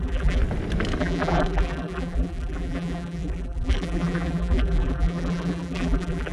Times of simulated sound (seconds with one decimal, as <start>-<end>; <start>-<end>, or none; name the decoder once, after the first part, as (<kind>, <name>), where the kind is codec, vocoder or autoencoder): 0.0-0.4 (vocoder, BigVGAN v2); 1.0-6.3